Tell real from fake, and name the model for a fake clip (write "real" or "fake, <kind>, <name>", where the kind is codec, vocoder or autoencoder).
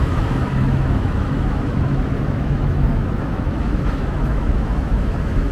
fake, autoencoder, DAC-VAE